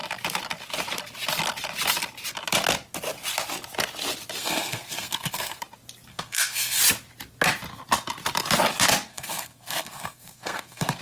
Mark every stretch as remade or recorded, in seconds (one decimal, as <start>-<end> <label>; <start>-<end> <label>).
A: 0.0-4.4 recorded; 4.4-5.6 remade; 5.6-6.1 recorded; 6.1-6.8 remade; 6.8-9.1 recorded; 9.1-11.0 remade